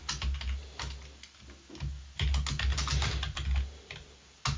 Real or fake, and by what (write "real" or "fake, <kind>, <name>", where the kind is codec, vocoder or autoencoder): real